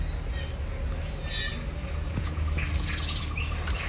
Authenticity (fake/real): real